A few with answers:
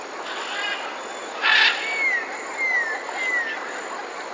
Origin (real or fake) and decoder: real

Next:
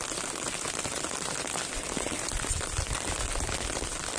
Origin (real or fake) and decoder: real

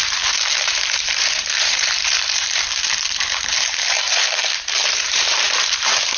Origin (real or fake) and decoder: fake, vocoder, BigVGAN v2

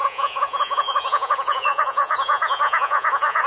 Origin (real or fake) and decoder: fake, vocoder, Vocos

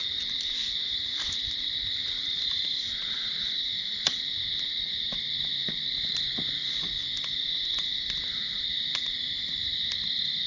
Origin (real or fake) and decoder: real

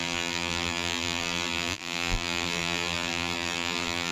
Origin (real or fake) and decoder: fake, vocoder, BigVGAN v2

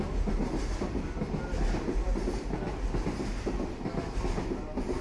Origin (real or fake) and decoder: real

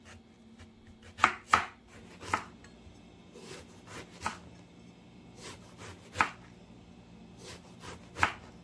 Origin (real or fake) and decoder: real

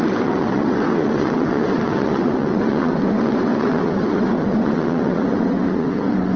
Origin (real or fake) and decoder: fake, vocoder, WaveNeXt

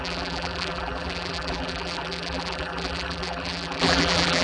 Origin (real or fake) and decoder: fake, vocoder, BigVGAN v2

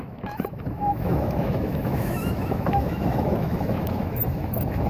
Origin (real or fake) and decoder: fake, autoencoder, DAC-VAE